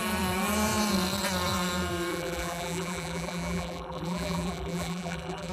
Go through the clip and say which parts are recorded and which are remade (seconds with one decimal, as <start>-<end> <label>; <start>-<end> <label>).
0.0-2.1 recorded; 2.1-5.5 remade